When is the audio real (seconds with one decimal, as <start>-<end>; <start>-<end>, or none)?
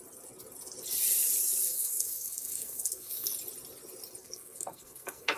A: 0.0-1.6; 3.3-4.2